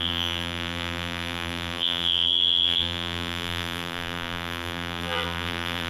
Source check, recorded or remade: remade